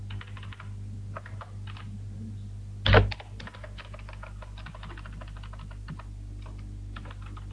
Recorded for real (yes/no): yes